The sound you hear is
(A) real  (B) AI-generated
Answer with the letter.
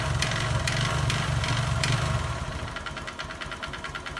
A